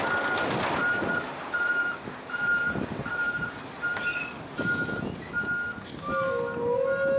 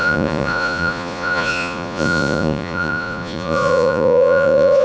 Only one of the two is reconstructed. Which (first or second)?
second